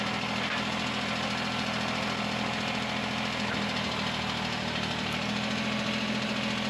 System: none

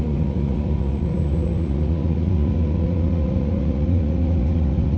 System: vocoder, Vocos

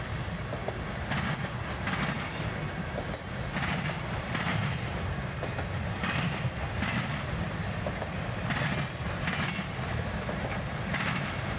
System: none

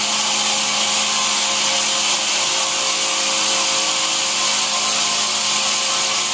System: none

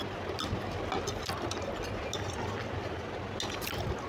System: none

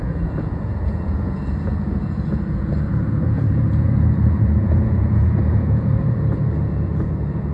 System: vocoder, Vocos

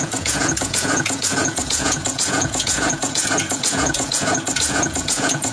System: vocoder, Vocos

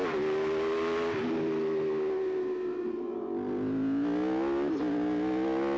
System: none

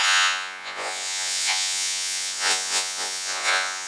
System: vocoder, Vocos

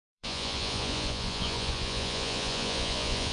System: vocoder, Vocos